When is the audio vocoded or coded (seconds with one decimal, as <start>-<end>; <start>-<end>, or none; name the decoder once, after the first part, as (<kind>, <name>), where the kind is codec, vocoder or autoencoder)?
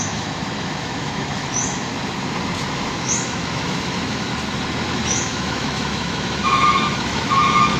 0.0-1.9 (autoencoder, DAC-VAE); 2.7-4.3; 4.9-7.8